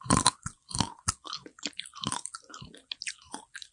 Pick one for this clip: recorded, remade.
recorded